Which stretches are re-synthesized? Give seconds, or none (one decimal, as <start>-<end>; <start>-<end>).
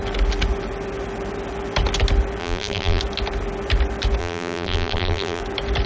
2.4-3.0; 4.2-5.4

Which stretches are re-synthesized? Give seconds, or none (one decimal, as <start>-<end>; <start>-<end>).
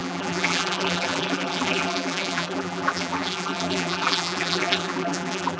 0.0-5.6